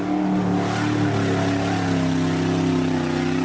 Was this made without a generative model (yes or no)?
yes